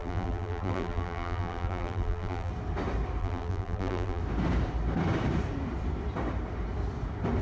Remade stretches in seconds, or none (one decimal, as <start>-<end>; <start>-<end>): 0.0-2.5; 3.2-4.2